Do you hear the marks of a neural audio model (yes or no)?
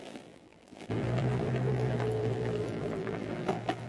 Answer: yes